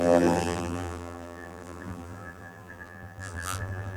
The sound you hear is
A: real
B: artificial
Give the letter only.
B